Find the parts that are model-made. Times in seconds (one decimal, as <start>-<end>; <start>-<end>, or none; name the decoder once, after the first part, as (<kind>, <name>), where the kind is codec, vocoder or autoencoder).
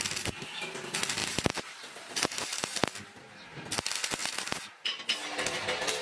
1.2-2.6 (vocoder, BigVGAN v2)